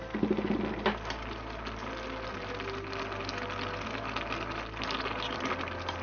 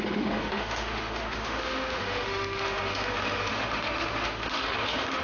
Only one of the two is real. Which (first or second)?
first